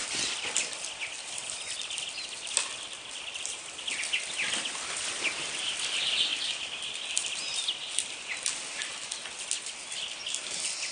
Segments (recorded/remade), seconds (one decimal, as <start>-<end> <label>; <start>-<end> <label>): 0.0-3.8 remade; 3.8-6.3 recorded; 6.3-8.8 remade; 8.8-10.9 recorded